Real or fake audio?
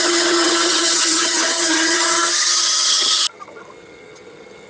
fake